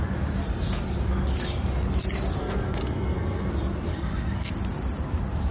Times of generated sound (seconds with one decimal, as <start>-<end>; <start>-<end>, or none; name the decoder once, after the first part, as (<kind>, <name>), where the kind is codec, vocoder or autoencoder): 2.4-3.5 (codec, SNAC); 3.9-4.5